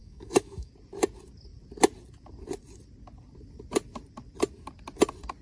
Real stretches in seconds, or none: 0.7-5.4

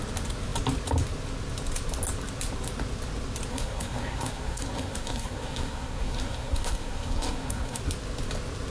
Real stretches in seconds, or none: 0.0-3.5; 7.8-8.7

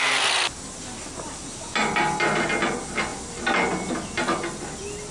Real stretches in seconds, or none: 0.0-5.1

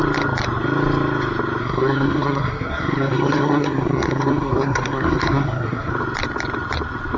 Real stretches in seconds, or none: 0.0-1.6; 5.9-7.2

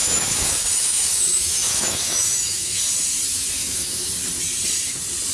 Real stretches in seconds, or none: 2.8-3.3; 4.1-5.3